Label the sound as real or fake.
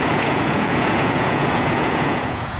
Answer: fake